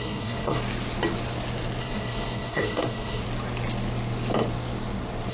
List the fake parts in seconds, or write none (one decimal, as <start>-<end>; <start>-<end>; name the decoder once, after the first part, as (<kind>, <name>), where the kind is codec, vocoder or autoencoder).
0.0-0.6 (codec, SNAC); 1.8-3.2